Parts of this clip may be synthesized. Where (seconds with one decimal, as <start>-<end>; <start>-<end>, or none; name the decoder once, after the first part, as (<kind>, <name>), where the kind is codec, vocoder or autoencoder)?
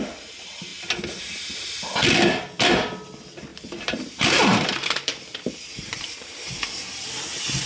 3.5-6.4 (vocoder, BigVGAN v2)